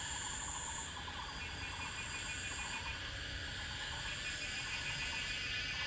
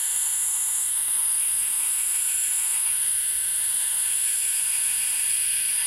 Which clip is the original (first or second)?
first